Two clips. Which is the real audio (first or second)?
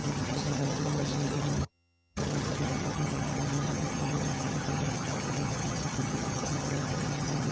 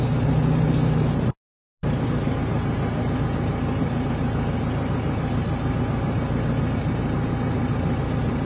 second